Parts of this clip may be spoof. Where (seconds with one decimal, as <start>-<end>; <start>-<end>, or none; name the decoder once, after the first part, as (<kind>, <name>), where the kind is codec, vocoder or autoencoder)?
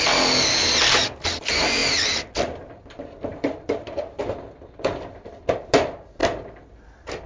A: 3.3-5.7 (vocoder, BigVGAN v2)